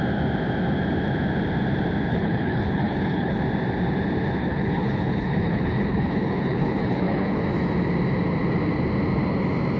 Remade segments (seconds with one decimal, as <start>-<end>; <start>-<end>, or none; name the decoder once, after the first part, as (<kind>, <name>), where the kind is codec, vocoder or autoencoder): 2.1-3.4 (codec, HILCodec); 4.4-7.4

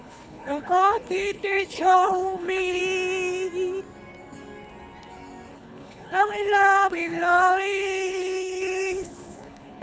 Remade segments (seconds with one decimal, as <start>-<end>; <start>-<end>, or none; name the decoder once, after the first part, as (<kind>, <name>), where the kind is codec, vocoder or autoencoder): 0.0-2.8 (codec, HILCodec); 5.5-9.8